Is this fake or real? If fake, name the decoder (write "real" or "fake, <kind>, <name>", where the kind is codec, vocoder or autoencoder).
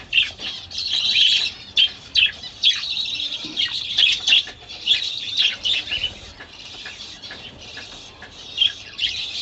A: fake, vocoder, BigVGAN v2